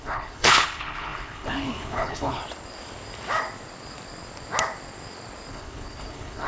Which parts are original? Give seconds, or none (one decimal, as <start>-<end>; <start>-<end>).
2.4-5.5